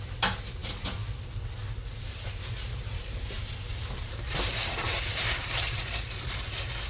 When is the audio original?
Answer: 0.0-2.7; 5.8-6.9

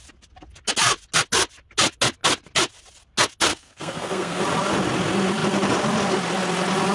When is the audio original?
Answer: 0.0-3.5; 4.4-6.9